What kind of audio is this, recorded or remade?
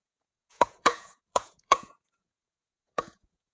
remade